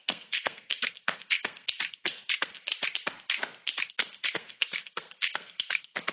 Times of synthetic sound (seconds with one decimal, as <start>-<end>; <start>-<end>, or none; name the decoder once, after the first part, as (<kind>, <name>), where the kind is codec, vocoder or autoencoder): 0.0-2.7 (codec, SNAC); 3.9-6.1